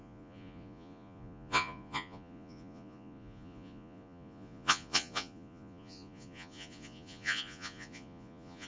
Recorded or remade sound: remade